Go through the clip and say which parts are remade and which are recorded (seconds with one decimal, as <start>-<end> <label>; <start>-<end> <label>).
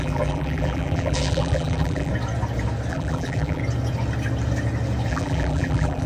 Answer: 0.0-2.1 remade; 2.1-2.9 recorded; 2.9-3.6 remade; 3.6-5.1 recorded; 5.1-6.1 remade